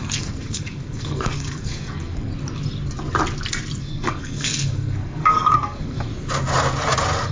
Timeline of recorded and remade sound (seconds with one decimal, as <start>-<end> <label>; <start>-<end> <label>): 0.0-2.3 remade; 2.3-3.8 recorded; 3.8-6.1 remade; 6.1-7.3 recorded

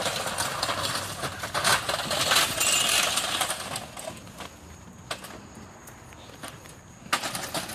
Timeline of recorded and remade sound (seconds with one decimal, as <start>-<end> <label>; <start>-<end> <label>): 0.0-7.7 recorded

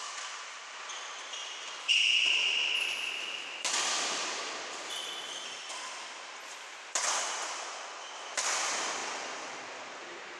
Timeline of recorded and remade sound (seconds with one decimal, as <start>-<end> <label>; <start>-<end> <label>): 0.0-10.4 recorded

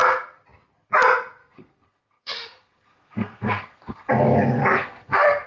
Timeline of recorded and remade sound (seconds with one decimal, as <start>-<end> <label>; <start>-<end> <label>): 0.0-1.4 recorded; 1.4-4.1 remade; 4.1-4.6 recorded; 4.6-5.5 remade

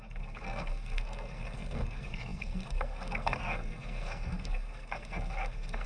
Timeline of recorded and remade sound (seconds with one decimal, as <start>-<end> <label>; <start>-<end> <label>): 0.0-5.9 remade

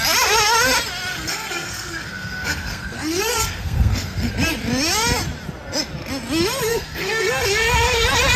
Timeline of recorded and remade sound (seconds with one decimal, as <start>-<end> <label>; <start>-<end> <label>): 0.0-1.1 recorded; 1.1-4.3 remade; 4.3-6.7 recorded; 6.7-7.3 remade; 7.3-8.4 recorded